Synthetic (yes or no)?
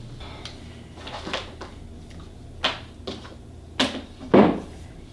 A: no